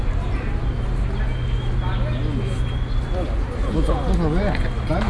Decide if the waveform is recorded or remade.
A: recorded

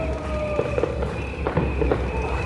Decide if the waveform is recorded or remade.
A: recorded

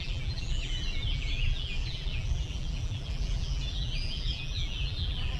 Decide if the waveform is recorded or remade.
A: remade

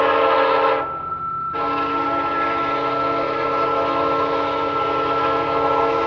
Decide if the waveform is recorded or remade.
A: recorded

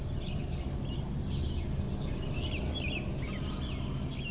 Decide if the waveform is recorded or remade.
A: recorded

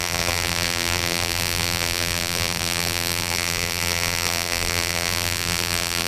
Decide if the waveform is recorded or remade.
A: remade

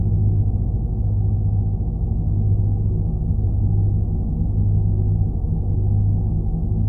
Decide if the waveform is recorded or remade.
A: recorded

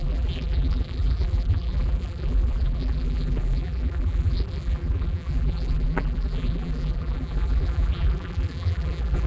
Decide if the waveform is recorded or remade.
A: remade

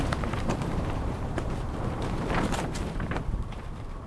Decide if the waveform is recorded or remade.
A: remade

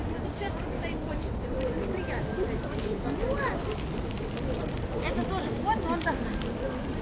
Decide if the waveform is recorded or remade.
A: remade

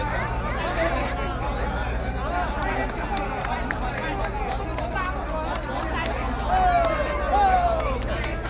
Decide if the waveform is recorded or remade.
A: recorded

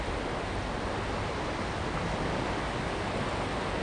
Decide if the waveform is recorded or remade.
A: recorded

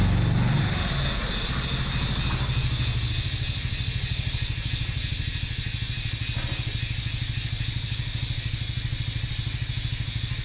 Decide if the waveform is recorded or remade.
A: recorded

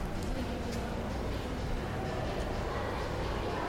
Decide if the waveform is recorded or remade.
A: recorded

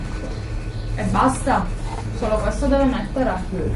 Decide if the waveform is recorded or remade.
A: recorded